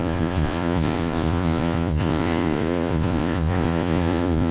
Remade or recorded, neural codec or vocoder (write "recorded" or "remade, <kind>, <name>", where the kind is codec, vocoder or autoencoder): remade, vocoder, Vocos